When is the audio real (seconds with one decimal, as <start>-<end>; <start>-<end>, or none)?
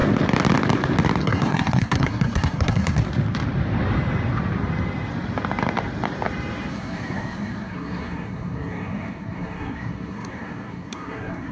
0.0-1.2; 3.0-6.7